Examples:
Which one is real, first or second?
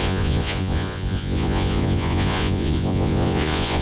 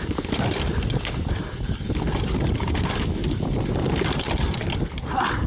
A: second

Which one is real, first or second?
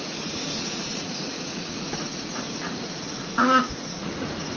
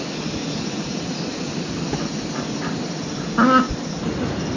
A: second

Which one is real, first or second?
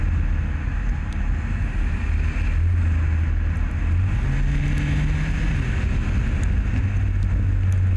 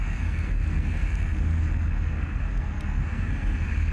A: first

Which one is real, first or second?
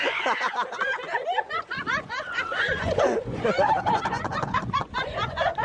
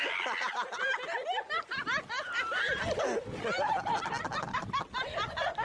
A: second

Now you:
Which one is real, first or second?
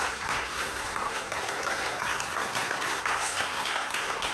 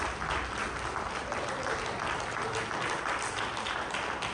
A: second